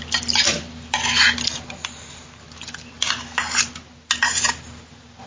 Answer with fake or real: real